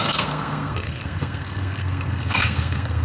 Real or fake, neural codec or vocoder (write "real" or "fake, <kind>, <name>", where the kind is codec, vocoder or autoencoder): fake, codec, SNAC